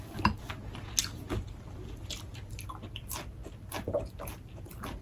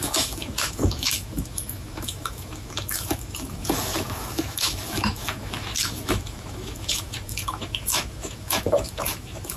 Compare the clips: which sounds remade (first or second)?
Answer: second